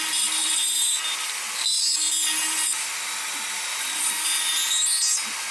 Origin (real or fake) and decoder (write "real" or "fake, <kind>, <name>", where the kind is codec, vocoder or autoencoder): real